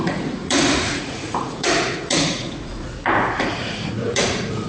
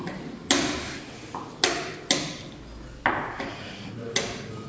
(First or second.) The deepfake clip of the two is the first